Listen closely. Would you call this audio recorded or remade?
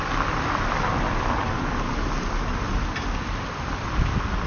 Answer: recorded